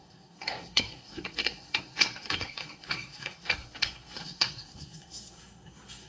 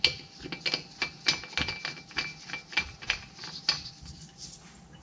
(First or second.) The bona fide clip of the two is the second